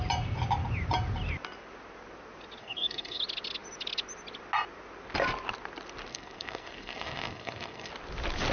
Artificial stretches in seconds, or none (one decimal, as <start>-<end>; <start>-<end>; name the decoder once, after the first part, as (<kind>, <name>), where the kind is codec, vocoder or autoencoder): 2.6-3.2 (codec, SNAC); 6.1-7.9